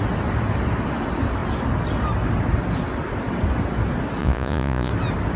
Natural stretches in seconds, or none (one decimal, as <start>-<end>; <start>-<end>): 0.0-4.2; 4.9-5.4